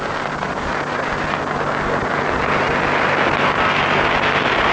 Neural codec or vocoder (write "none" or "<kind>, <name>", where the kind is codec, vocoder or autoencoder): none